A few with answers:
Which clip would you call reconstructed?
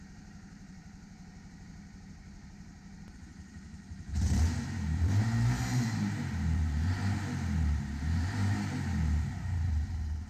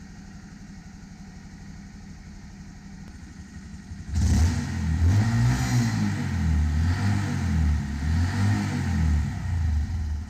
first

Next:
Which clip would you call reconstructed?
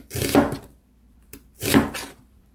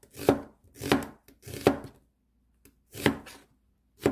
first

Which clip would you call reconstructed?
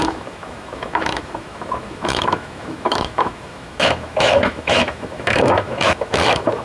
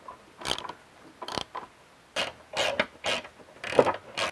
first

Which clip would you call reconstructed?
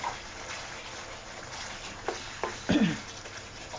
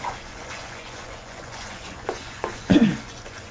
second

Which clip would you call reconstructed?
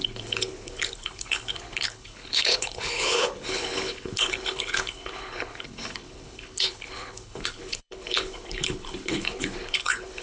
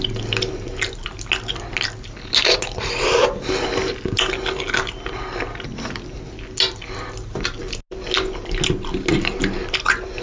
first